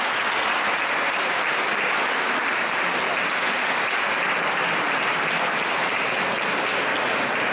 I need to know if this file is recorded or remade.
recorded